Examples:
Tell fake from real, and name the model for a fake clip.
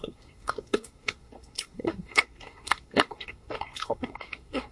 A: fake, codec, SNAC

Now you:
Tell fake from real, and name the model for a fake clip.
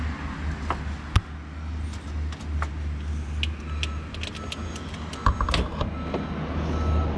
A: real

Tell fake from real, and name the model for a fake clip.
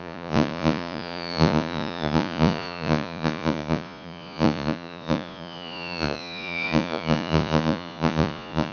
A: fake, vocoder, Vocos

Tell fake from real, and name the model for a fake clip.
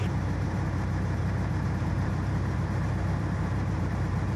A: fake, vocoder, BigVGAN v2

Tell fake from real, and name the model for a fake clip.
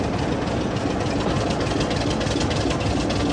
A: real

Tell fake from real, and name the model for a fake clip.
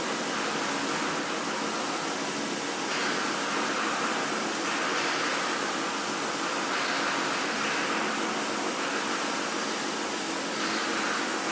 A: real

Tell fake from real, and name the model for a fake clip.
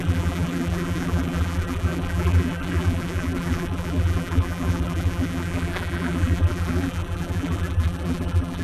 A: fake, vocoder, BigVGAN v2